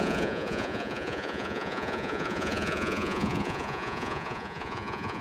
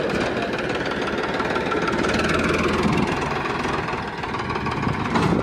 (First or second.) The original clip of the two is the second